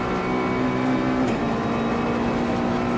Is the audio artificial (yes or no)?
no